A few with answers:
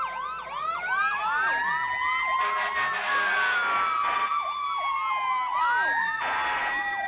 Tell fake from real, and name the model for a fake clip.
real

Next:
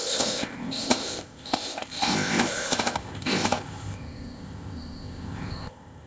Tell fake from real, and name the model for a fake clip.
fake, codec, ZipCodec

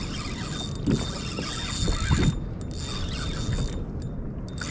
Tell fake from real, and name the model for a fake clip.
real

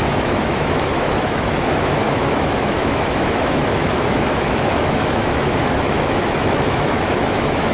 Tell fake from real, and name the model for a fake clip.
fake, autoencoder, DAC-VAE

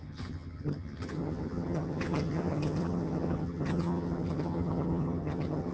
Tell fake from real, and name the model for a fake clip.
fake, vocoder, HiFi-GAN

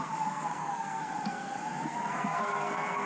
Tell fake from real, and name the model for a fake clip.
fake, codec, SNAC